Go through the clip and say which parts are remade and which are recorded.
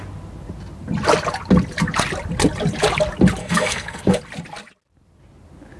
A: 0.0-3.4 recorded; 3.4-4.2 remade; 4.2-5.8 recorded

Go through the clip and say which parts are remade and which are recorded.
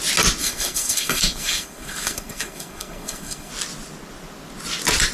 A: 0.0-0.4 recorded; 0.4-3.5 remade; 3.5-5.1 recorded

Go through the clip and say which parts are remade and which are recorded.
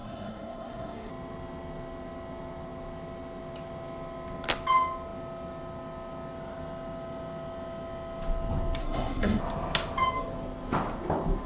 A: 0.0-1.1 remade; 1.1-8.8 recorded; 8.8-9.4 remade; 9.4-11.5 recorded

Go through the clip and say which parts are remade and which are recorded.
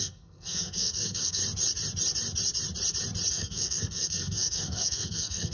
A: 0.0-1.4 remade; 1.4-3.3 recorded; 3.3-5.5 remade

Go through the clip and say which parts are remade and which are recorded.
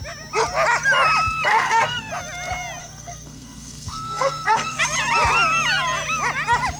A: 0.0-1.5 recorded; 1.5-2.1 remade; 2.1-2.8 recorded; 2.8-4.8 remade; 4.8-6.8 recorded